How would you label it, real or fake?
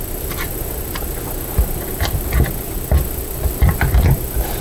real